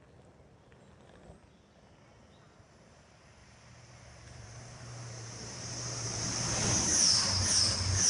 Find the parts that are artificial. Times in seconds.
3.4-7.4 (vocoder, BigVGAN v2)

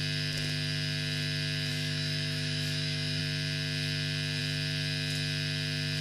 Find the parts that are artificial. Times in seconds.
1.7-3.2 (autoencoder, DAC-VAE)

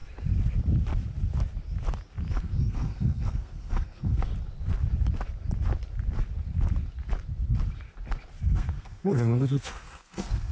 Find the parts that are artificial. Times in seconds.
2.4-4.3 (codec, SNAC); 8.4-10.5